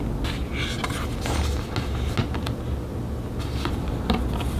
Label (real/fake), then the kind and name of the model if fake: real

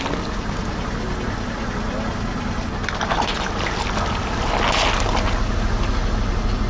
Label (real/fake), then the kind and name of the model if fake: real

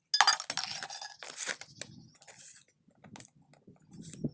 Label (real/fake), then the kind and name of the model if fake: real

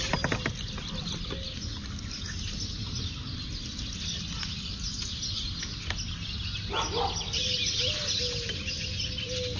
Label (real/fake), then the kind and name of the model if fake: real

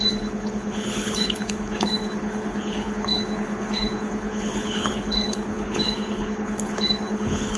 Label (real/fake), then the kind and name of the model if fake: fake, codec, HILCodec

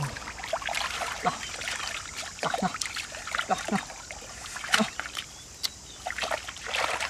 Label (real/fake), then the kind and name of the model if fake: real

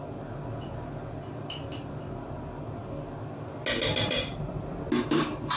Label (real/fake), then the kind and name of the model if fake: real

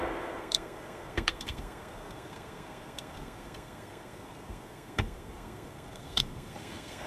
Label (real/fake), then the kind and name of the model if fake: fake, codec, SNAC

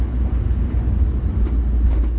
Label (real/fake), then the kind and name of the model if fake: real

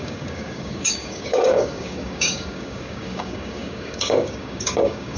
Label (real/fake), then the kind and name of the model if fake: fake, codec, DAC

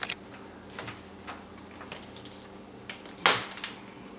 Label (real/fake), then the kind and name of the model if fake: real